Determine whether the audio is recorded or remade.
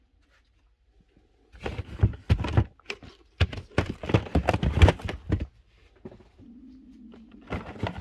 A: recorded